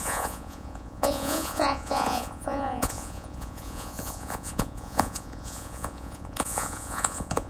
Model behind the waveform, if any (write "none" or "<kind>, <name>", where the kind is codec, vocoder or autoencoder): vocoder, Vocos